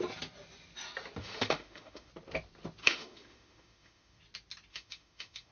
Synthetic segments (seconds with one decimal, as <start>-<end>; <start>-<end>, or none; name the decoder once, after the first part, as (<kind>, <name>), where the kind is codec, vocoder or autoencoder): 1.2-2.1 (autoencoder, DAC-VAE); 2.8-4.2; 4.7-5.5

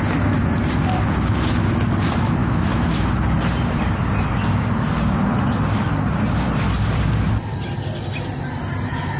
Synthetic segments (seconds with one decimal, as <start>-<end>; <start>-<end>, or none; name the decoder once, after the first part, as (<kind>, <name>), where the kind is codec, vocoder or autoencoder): 2.4-3.2 (autoencoder, DAC-VAE)

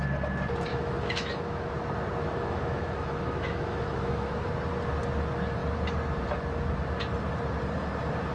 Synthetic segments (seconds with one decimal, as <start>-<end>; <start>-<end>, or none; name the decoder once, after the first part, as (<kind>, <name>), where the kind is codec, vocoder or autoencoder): 0.7-1.7 (autoencoder, DAC-VAE); 2.2-4.3